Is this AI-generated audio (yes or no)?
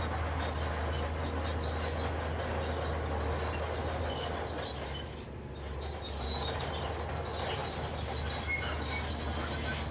no